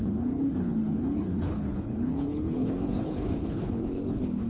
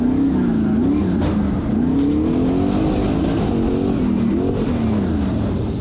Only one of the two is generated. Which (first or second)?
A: first